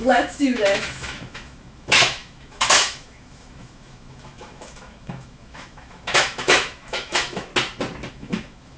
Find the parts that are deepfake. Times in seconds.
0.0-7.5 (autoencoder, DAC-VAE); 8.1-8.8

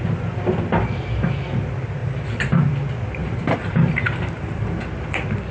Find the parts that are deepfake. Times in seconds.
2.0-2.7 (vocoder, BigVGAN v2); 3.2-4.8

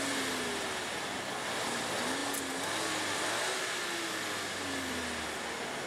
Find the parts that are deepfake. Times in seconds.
none

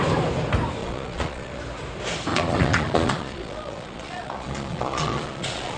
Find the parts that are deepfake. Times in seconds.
0.8-1.6 (vocoder, Vocos); 2.3-5.8